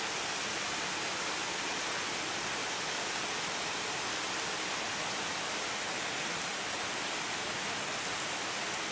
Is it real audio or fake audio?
real